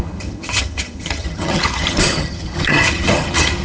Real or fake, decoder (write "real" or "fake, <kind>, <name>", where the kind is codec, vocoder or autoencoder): fake, vocoder, HiFi-GAN